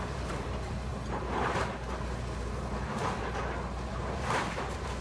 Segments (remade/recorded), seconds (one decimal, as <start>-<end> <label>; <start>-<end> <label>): 0.0-0.9 remade; 0.9-3.9 recorded; 3.9-5.0 remade